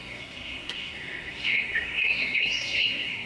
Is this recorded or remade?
remade